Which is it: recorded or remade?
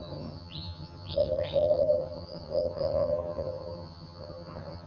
remade